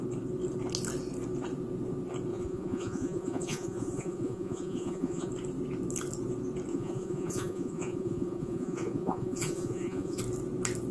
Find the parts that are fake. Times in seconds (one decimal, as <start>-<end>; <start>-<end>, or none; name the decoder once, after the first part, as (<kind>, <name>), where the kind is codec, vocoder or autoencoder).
2.3-5.3 (vocoder, Vocos); 6.7-10.2